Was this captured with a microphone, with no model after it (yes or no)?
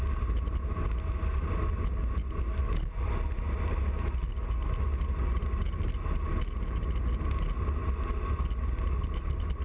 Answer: yes